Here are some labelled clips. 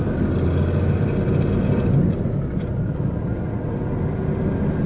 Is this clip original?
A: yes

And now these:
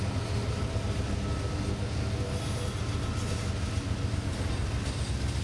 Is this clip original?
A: yes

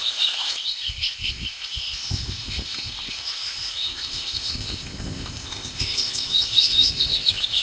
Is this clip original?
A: no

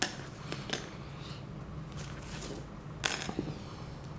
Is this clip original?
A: yes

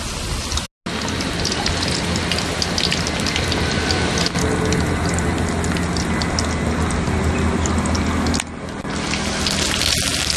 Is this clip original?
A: yes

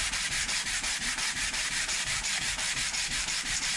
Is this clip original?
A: no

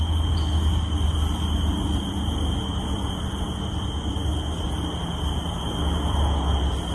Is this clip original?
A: yes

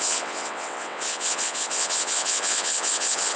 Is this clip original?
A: no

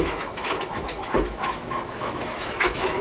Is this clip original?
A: no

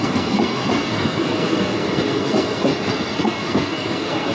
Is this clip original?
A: no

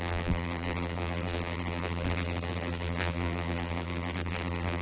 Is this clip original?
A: no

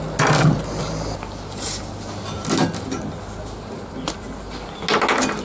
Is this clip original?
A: yes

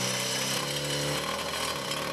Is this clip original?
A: yes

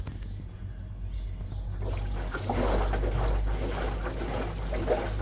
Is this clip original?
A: yes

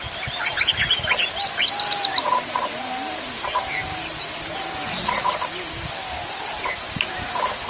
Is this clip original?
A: yes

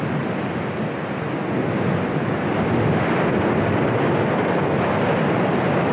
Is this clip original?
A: yes